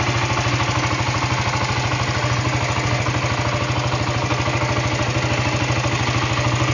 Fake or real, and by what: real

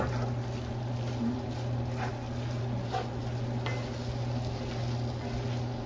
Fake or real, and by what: real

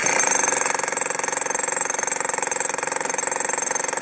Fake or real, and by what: real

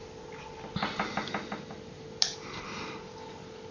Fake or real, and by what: real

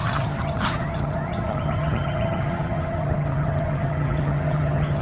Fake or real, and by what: fake, vocoder, HiFi-GAN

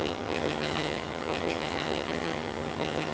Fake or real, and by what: fake, vocoder, HiFi-GAN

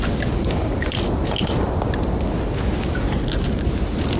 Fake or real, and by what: real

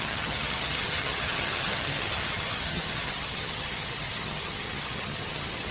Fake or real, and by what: fake, vocoder, HiFi-GAN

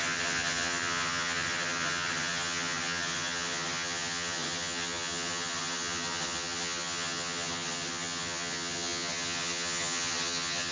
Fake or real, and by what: fake, vocoder, HiFi-GAN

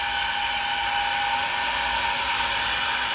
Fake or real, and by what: real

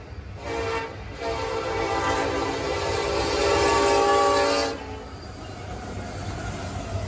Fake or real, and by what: real